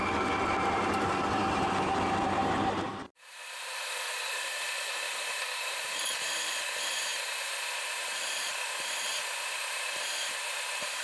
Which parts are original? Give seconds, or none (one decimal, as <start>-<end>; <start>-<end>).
0.0-0.6